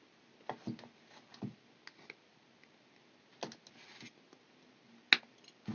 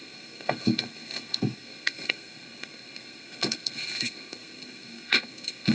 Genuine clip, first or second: first